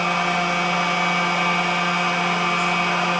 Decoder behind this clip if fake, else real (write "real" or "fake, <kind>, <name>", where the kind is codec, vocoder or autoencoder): real